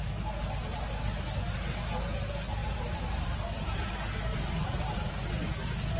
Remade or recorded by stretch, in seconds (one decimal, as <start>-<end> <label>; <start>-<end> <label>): 0.0-2.6 recorded; 2.6-3.9 remade; 3.9-4.3 recorded; 4.3-5.1 remade; 5.1-6.0 recorded